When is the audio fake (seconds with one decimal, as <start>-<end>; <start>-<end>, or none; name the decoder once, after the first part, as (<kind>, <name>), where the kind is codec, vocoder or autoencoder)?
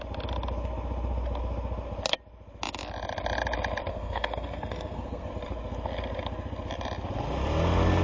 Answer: 3.9-5.3 (codec, SNAC)